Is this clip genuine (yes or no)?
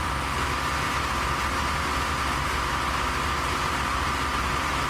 yes